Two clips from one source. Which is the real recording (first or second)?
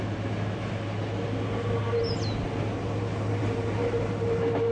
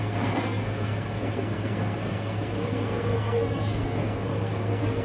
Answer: first